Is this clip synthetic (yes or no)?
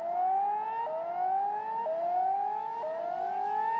no